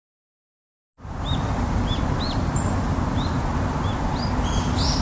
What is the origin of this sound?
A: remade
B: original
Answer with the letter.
B